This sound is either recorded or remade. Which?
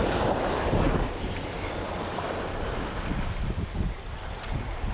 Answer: recorded